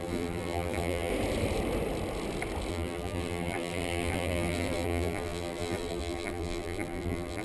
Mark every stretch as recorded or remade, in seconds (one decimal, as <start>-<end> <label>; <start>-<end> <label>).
0.0-1.1 remade; 1.1-2.7 recorded; 2.7-7.4 remade